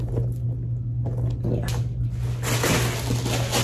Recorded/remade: recorded